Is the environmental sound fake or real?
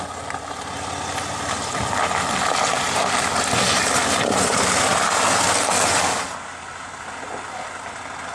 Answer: real